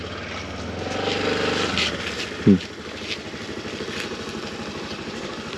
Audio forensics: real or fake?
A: real